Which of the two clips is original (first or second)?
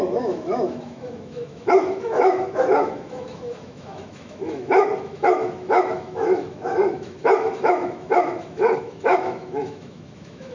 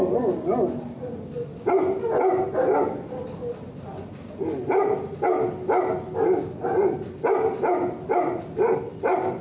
second